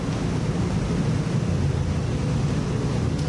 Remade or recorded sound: recorded